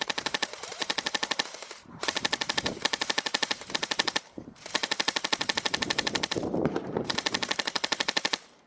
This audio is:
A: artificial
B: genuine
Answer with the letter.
A